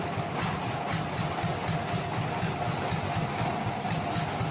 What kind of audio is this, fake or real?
real